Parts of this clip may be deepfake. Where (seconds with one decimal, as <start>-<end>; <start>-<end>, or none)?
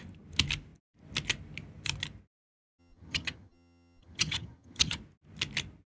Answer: 2.8-5.0